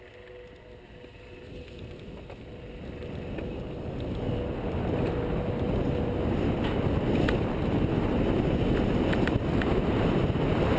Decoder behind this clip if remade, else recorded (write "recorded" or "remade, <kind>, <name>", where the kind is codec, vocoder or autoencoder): recorded